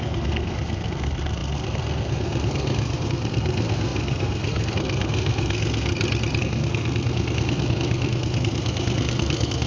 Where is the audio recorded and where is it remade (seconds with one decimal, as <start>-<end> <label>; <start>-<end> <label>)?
0.0-5.9 remade; 5.9-6.4 recorded; 6.4-9.7 remade